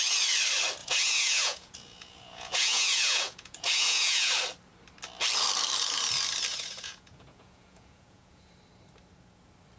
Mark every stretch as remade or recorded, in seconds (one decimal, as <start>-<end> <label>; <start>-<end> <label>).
0.0-0.8 recorded; 0.8-4.3 remade; 4.3-6.5 recorded; 6.5-8.5 remade; 8.5-9.8 recorded